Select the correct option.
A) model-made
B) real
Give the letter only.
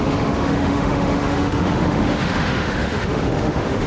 A